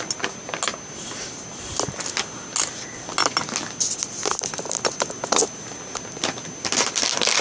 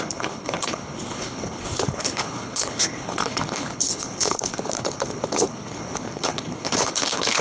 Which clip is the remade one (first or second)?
second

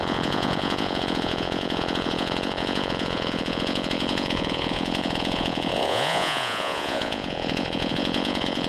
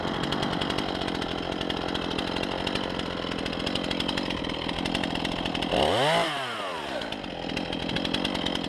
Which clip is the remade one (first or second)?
first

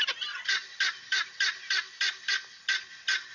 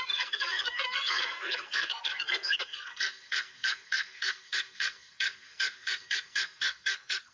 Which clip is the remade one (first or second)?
second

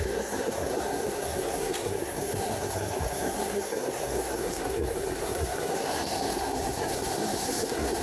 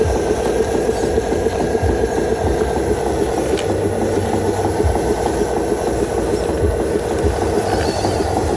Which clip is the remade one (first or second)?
first